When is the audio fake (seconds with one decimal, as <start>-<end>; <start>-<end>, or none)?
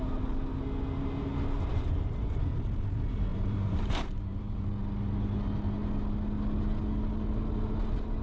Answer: 1.7-2.4; 3.3-4.7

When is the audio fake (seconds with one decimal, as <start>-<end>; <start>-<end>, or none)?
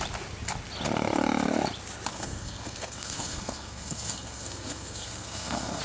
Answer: 2.1-5.8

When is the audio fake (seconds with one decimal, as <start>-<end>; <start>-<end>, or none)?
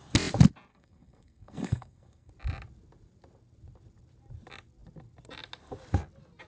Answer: 0.7-2.3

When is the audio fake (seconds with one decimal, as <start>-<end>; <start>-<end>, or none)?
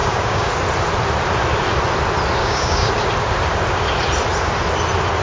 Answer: 0.0-0.5; 2.4-2.9